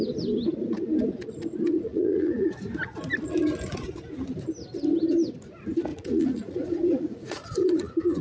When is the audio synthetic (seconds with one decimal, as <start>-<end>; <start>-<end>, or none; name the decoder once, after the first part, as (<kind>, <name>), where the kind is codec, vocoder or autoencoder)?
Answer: 1.7-2.6 (vocoder, Vocos); 5.9-8.2